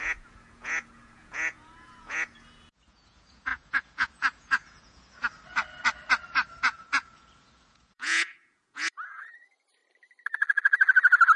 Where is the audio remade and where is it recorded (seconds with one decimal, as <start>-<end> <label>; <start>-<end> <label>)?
0.0-5.2 remade; 5.2-6.6 recorded; 6.6-9.8 remade; 9.8-11.4 recorded